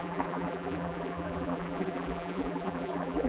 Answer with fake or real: fake